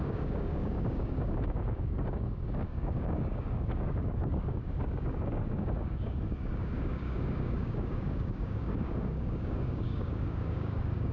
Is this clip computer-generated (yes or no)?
yes